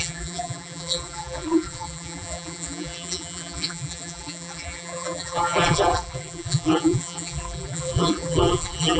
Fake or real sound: fake